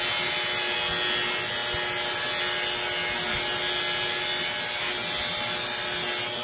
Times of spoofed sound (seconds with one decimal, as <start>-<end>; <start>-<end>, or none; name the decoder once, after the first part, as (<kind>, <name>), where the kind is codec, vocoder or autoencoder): none